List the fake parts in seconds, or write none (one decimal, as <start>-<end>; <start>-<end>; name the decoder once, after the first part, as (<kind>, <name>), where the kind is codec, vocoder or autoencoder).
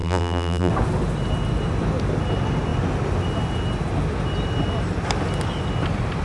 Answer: 0.0-0.7 (vocoder, BigVGAN v2)